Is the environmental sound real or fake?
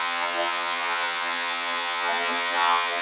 fake